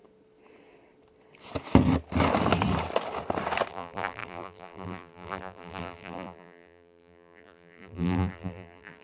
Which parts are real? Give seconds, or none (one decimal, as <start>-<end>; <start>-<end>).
0.0-3.7